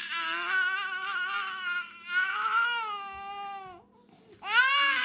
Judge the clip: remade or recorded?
recorded